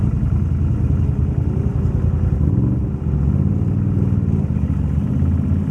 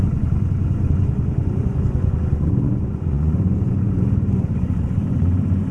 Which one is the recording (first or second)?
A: first